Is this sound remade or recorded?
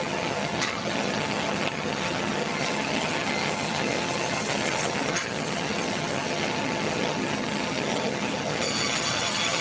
remade